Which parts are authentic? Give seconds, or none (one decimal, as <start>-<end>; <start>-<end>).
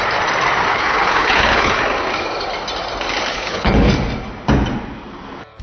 0.0-0.7; 1.8-3.3; 3.9-5.6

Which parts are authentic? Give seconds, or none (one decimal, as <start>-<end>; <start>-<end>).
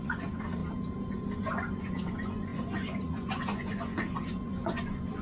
0.6-1.4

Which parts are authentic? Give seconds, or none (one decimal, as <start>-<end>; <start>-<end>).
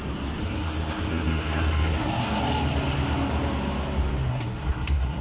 0.0-0.4; 2.4-4.3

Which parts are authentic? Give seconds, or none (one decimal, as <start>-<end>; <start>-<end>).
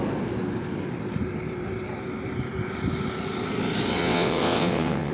0.0-4.0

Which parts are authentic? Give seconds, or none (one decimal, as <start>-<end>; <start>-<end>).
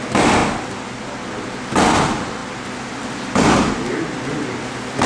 0.0-5.1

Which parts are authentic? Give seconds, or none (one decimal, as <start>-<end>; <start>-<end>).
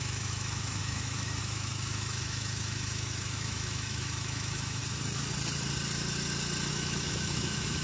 4.8-6.7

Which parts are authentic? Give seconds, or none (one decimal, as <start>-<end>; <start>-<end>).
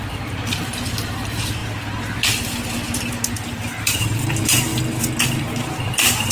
1.6-3.8; 4.7-5.4